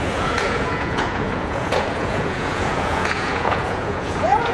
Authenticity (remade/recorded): remade